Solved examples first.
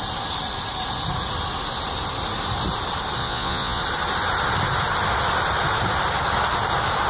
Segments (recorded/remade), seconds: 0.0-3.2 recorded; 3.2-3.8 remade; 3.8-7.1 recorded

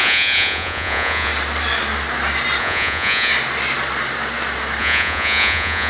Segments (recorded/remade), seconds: 0.0-1.3 remade; 1.3-2.6 recorded; 2.6-3.3 remade; 3.3-4.8 recorded; 4.8-5.9 remade